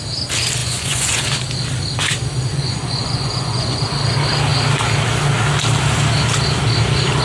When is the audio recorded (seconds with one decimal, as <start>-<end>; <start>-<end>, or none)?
0.0-0.6; 1.2-2.5; 3.8-7.2